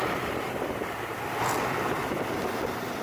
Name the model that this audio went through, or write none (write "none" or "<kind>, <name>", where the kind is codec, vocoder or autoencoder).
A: vocoder, BigVGAN v2